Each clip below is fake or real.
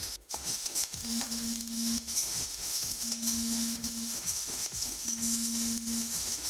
fake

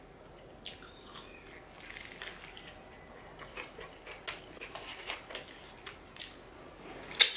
real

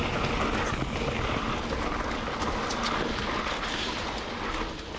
real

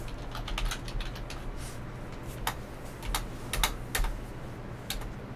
real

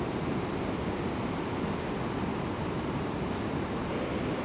real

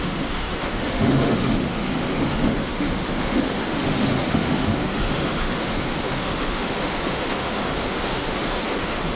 fake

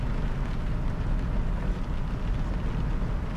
real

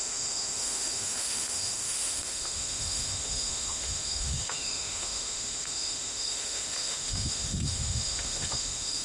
fake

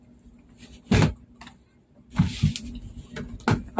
real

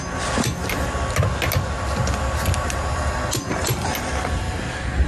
real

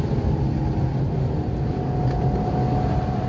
real